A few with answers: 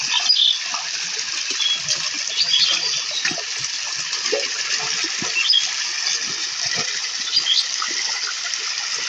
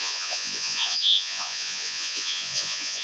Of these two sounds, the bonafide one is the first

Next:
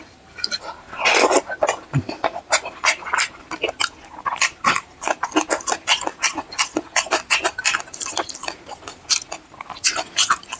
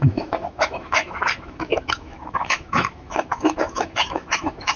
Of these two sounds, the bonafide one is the first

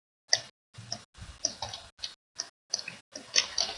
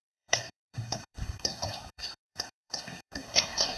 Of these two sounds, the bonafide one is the first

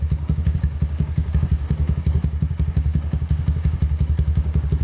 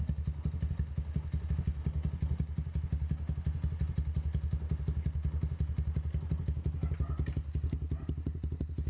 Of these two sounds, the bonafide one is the second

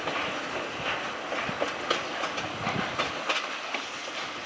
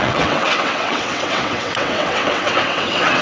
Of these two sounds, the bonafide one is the first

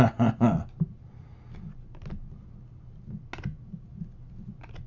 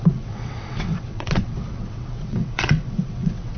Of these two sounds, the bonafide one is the first